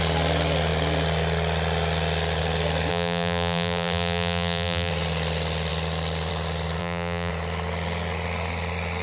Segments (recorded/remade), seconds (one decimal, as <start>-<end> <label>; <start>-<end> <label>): 0.0-2.9 recorded; 2.9-4.9 remade; 4.9-6.8 recorded; 6.8-7.3 remade; 7.3-9.0 recorded